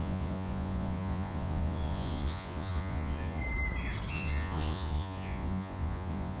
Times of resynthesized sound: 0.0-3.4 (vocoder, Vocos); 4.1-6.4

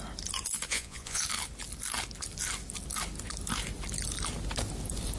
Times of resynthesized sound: 0.7-1.2 (vocoder, Vocos)

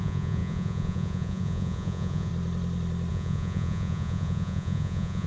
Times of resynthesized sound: 0.0-2.3 (vocoder, Vocos); 3.1-5.3

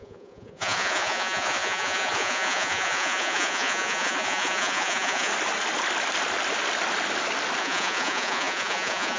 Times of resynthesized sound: 0.0-5.3 (vocoder, Vocos); 7.6-9.2

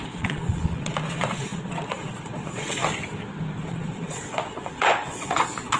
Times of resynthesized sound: 0.0-2.8 (vocoder, Vocos); 3.7-5.8

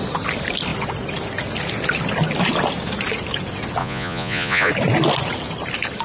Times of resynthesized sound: 3.8-4.7 (vocoder, Vocos)

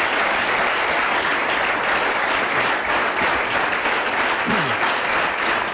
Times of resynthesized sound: none